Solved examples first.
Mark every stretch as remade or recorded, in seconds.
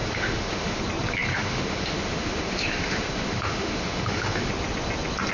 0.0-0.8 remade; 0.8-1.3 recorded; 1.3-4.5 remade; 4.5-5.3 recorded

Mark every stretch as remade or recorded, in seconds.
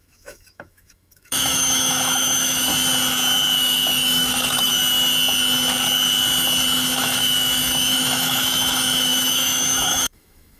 0.0-2.7 remade; 2.7-3.6 recorded; 3.6-4.7 remade; 4.7-7.0 recorded; 7.0-10.6 remade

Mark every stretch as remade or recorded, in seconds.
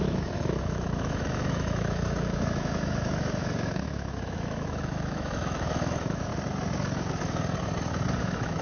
0.0-6.3 remade; 6.3-8.2 recorded; 8.2-8.6 remade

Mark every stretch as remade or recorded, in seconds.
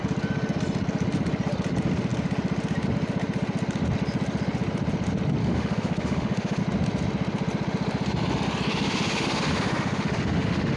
0.0-5.4 recorded; 5.4-6.6 remade; 6.6-8.7 recorded; 8.7-10.8 remade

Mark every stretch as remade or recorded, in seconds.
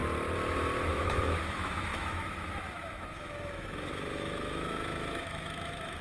0.0-0.9 recorded; 0.9-6.0 remade